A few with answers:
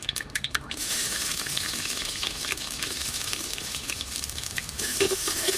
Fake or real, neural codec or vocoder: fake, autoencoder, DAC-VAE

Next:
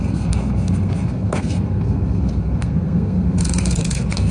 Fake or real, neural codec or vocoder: fake, codec, SNAC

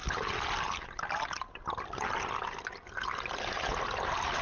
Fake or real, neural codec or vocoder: real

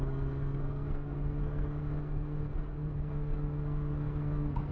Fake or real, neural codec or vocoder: fake, codec, SNAC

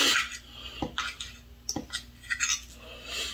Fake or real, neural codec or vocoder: real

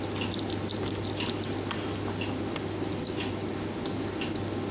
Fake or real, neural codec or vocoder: real